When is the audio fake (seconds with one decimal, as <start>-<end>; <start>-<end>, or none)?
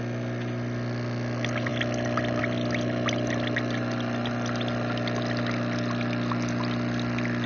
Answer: none